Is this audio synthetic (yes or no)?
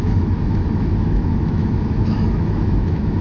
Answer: yes